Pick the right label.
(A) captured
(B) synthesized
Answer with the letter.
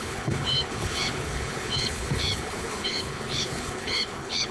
B